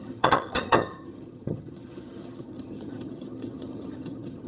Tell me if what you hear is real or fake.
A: fake